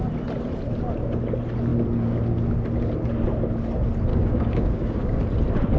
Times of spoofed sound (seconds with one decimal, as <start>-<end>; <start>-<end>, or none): 4.1-5.2